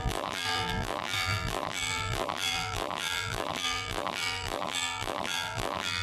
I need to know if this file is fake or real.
fake